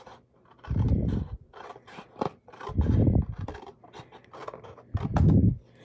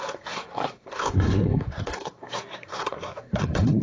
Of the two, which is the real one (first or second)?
first